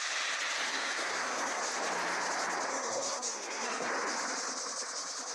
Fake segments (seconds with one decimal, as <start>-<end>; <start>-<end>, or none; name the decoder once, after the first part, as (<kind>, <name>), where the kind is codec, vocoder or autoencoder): 0.7-1.6 (codec, SNAC); 2.7-3.9